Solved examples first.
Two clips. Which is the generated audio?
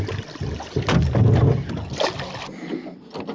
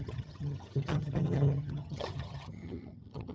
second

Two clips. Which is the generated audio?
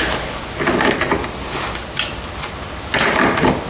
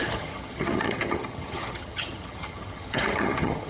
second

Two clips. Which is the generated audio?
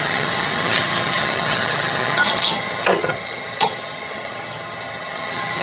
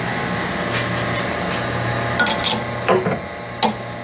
first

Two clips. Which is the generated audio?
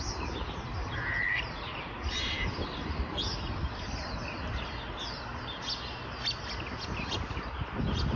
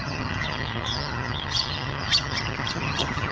second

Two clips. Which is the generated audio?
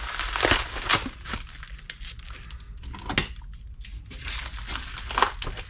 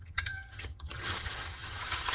second